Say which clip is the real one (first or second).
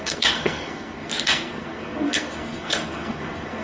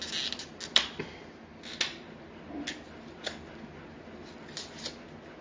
second